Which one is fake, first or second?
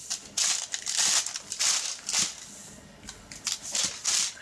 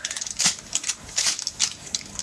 second